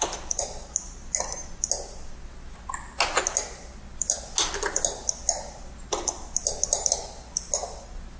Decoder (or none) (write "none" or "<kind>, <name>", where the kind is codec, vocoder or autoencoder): none